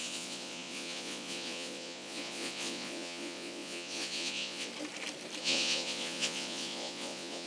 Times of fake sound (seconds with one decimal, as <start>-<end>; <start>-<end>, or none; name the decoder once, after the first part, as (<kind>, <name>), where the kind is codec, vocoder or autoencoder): 0.0-4.7 (vocoder, Vocos); 5.4-7.5